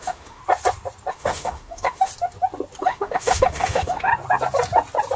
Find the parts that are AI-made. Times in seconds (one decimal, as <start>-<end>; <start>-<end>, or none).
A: 0.0-0.4; 1.1-2.1; 2.8-4.1